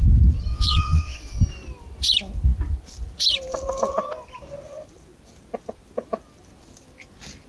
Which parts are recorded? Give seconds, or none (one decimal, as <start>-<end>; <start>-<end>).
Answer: 0.0-0.5; 1.4-7.5